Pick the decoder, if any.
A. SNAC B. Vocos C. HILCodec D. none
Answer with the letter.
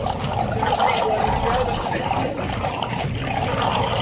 D